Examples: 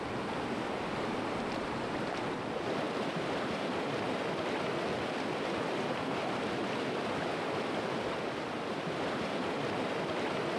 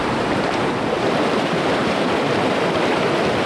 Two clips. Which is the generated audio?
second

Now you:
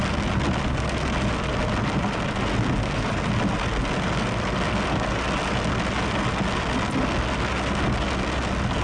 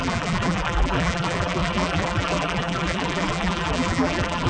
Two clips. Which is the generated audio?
second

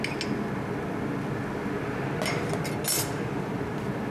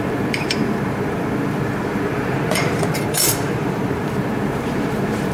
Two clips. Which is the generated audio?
second